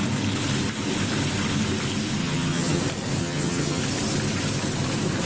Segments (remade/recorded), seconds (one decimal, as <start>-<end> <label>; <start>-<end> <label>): 0.0-2.2 recorded; 2.2-2.8 remade; 2.8-3.2 recorded; 3.2-3.8 remade; 3.8-5.3 recorded